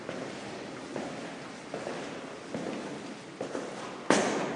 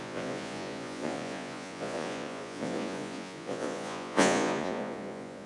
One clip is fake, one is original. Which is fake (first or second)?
second